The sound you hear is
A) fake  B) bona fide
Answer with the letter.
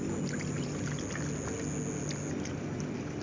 B